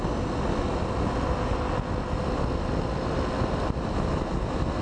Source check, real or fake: real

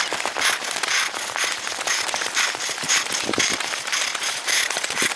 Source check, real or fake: fake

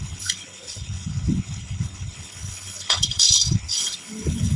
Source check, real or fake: fake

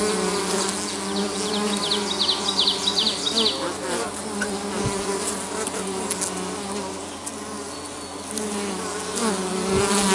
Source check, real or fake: real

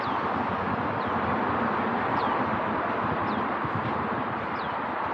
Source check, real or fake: real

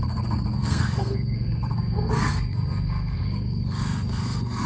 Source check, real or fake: fake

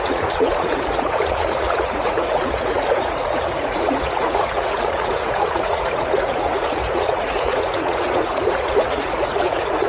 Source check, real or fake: fake